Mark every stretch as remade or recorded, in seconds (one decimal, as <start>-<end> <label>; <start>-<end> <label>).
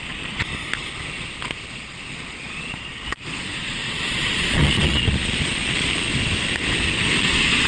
0.0-0.5 remade; 0.5-1.7 recorded; 1.7-6.1 remade; 6.1-7.2 recorded; 7.2-7.7 remade